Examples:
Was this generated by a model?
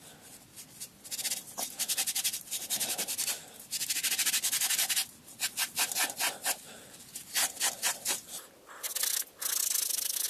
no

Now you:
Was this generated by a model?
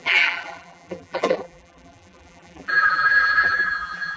yes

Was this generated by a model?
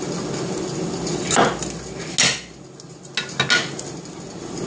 no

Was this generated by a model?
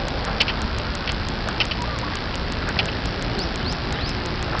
no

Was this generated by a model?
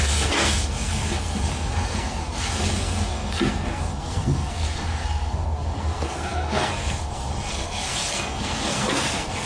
yes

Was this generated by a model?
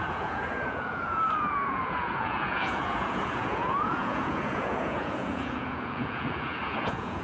yes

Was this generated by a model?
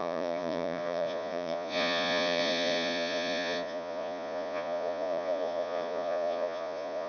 yes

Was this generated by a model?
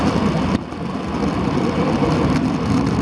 no